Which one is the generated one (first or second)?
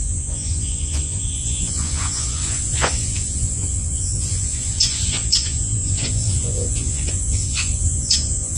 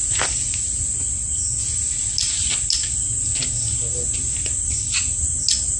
first